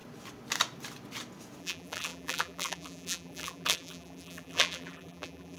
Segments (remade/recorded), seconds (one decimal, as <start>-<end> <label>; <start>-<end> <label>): 0.0-1.6 recorded; 1.6-5.6 remade